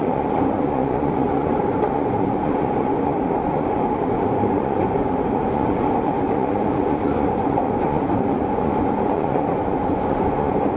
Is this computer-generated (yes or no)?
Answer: yes